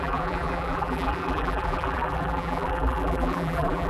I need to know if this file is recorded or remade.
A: remade